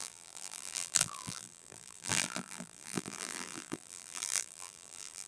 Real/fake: fake